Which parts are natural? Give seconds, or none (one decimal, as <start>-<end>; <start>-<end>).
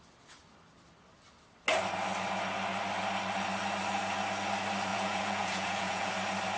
0.0-4.9; 6.1-6.6